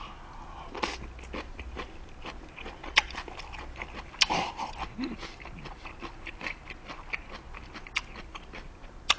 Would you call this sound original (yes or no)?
yes